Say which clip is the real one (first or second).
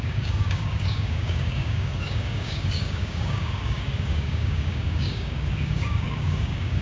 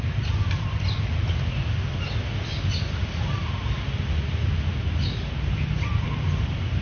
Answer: second